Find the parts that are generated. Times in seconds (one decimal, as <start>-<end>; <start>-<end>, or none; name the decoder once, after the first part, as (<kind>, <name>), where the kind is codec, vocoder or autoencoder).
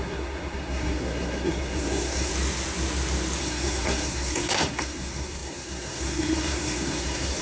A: 0.0-2.3 (codec, SNAC); 3.4-7.4